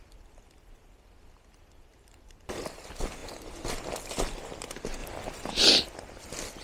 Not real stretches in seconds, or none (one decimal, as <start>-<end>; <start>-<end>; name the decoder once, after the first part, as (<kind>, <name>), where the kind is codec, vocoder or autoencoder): 1.9-2.6 (vocoder, BigVGAN v2)